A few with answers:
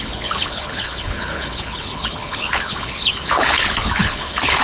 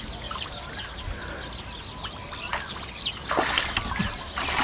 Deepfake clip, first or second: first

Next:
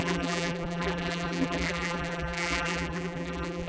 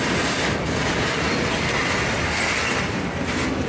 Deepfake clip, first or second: first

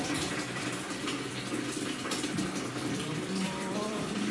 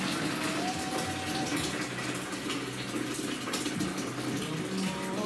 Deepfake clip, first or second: first